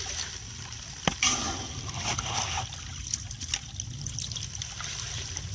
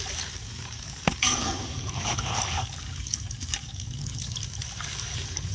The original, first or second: first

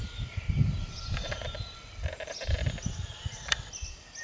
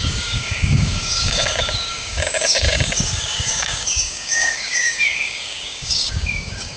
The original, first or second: first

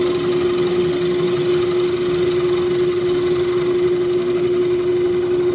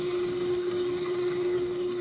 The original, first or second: first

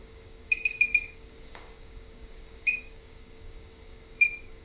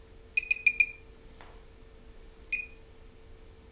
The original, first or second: second